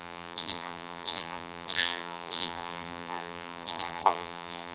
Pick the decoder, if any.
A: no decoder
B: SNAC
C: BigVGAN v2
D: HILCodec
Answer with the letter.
C